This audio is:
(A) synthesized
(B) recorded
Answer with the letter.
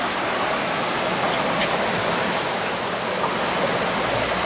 B